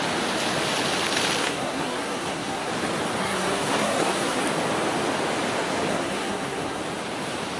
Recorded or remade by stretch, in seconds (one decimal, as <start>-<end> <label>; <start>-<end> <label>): 0.0-1.4 recorded; 1.4-2.7 remade; 2.7-3.2 recorded; 3.2-4.4 remade; 4.4-5.9 recorded; 5.9-6.8 remade; 6.8-7.6 recorded